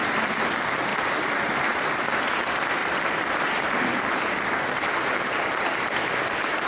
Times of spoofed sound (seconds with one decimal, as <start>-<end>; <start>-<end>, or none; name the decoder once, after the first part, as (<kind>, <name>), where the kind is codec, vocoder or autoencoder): 0.9-2.3 (vocoder, BigVGAN v2); 2.8-5.6